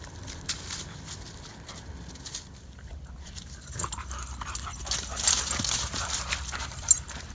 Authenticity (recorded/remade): remade